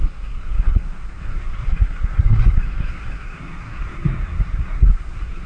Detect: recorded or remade remade